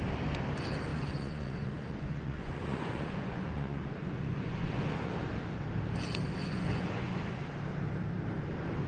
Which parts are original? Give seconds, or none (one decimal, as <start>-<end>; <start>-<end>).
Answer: 0.0-0.9; 5.1-6.4; 7.4-8.9